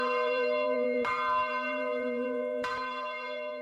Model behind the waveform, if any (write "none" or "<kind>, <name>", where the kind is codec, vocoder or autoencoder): vocoder, BigVGAN v2